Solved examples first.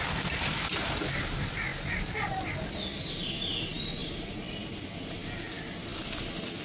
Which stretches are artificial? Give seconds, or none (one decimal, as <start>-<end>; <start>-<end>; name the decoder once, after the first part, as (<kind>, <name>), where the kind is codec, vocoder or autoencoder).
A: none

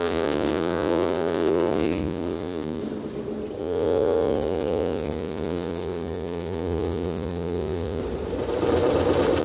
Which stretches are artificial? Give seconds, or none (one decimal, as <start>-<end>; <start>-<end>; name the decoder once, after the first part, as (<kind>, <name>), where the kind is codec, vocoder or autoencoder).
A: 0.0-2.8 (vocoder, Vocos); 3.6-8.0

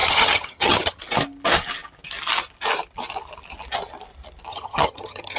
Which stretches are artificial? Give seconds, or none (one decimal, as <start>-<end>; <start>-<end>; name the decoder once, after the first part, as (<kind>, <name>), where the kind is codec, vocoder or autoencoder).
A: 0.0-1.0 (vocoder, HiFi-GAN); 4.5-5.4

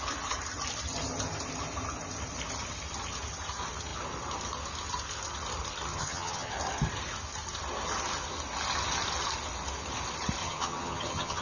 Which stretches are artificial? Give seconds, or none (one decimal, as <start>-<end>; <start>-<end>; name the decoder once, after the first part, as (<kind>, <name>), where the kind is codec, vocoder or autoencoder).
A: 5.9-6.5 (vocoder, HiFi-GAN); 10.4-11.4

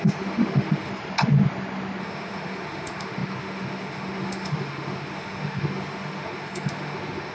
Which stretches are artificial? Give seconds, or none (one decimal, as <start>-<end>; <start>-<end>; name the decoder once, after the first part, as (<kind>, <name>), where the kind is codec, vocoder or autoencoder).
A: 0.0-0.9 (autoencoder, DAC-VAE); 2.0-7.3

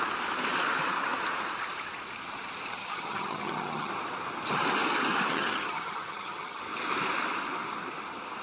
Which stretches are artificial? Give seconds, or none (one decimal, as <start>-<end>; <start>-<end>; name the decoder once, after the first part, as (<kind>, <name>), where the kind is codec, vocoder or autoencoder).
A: 2.8-3.9 (vocoder, HiFi-GAN); 5.3-6.6

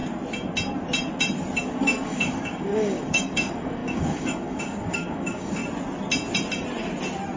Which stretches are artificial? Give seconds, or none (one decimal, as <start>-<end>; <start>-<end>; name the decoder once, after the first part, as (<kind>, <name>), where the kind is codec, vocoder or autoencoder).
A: 1.6-5.6 (codec, DAC)